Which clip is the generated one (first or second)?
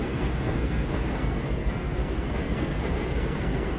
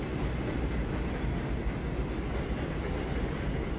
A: first